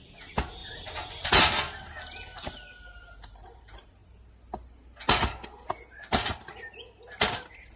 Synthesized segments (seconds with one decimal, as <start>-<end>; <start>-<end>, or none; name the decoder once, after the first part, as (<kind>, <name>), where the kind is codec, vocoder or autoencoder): 0.6-1.4 (vocoder, BigVGAN v2)